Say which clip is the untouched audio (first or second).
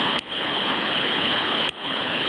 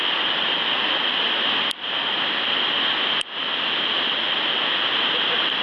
second